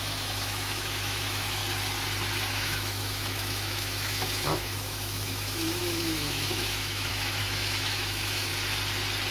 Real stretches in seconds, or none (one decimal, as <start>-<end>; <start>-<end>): 1.6-2.5; 8.5-9.3